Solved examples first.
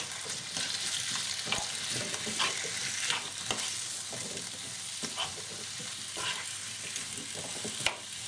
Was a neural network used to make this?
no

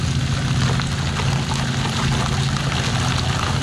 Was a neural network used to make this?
no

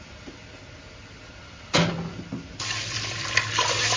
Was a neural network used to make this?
no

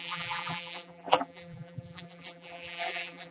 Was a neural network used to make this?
yes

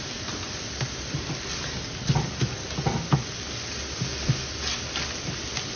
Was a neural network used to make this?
no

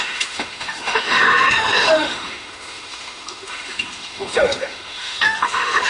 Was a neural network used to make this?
yes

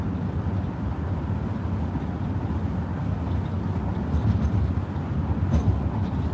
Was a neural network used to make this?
no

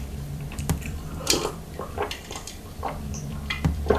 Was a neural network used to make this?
yes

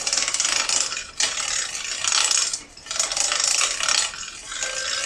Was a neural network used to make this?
no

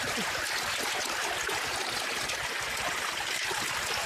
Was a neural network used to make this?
no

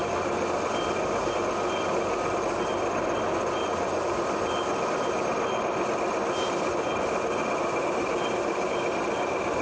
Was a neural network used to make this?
no